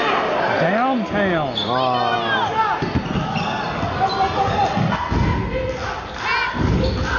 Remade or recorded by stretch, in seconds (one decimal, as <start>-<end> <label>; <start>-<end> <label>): 0.0-7.2 recorded